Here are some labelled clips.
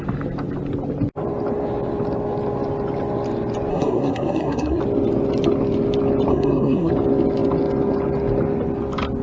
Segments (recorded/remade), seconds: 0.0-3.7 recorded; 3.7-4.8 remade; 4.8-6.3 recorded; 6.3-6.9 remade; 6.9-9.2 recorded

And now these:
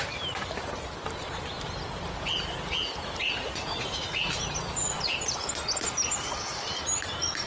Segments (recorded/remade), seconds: 0.0-3.2 recorded; 3.2-4.3 remade; 4.3-7.5 recorded